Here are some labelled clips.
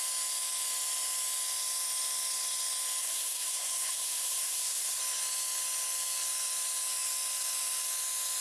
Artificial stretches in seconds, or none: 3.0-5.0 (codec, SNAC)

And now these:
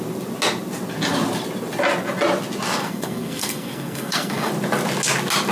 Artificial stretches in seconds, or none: 2.8-4.5 (codec, SNAC)